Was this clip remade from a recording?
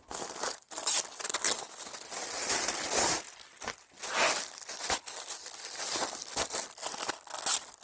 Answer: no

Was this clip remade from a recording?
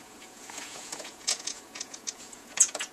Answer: yes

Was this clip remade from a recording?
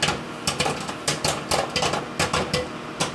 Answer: no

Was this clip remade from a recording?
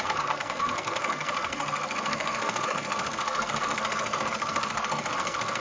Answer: yes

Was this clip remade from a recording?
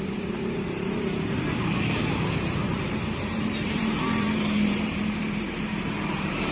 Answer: yes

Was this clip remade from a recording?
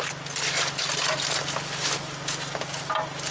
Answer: no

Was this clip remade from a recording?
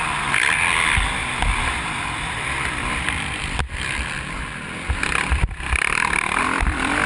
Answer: yes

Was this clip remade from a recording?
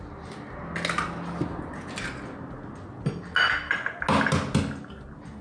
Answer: no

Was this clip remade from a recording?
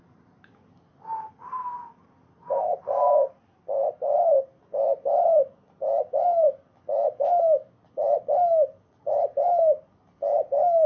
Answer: no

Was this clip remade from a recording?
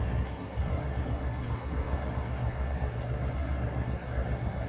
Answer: yes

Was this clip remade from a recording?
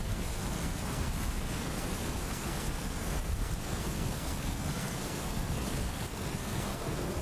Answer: yes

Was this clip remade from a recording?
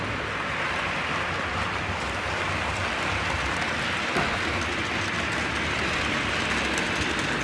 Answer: no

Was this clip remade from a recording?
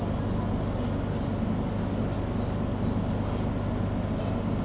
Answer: no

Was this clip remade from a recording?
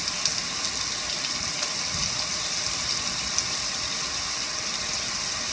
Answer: no